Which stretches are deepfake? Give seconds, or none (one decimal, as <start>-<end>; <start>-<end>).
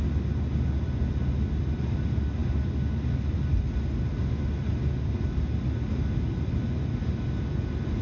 none